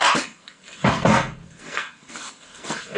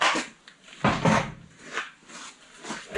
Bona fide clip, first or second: second